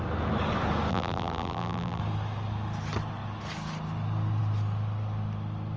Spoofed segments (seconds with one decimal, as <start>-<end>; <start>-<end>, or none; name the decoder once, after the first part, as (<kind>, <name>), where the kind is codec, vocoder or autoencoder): 0.9-2.0 (vocoder, BigVGAN v2)